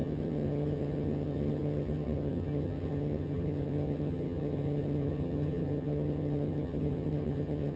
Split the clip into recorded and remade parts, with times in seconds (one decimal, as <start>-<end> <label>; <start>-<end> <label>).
0.0-7.8 remade